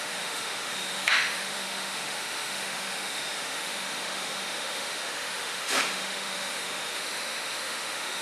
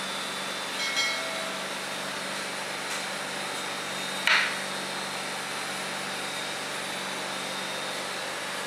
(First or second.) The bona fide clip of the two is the second